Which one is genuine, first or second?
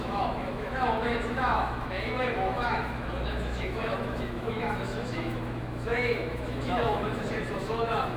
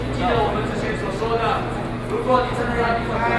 second